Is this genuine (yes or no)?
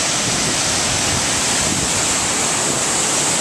yes